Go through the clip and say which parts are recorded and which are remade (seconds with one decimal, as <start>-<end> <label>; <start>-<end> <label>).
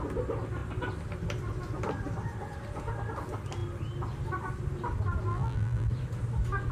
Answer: 0.0-5.3 recorded; 5.3-5.9 remade; 5.9-6.7 recorded